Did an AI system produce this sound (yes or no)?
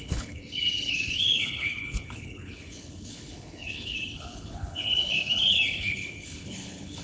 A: yes